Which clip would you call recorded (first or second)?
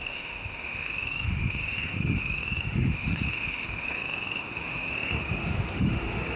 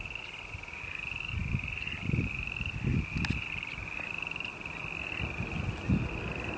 second